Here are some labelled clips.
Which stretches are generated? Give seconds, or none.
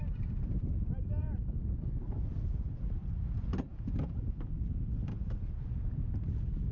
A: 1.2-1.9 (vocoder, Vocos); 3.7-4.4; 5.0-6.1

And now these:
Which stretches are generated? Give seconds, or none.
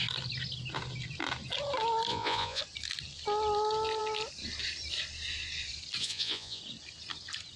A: 2.1-2.6 (vocoder, Vocos); 6.0-6.6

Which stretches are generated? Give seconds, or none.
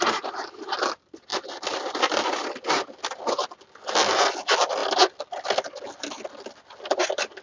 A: none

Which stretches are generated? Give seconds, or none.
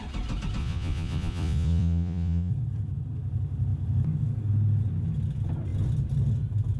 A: 0.6-2.5 (vocoder, Vocos)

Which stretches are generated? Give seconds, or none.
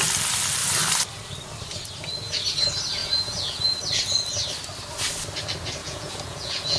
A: 3.0-3.8 (vocoder, Vocos); 5.8-6.8